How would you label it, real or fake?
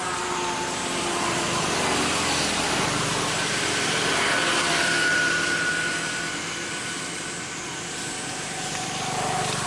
real